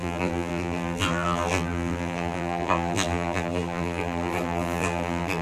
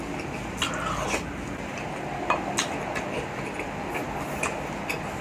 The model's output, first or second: first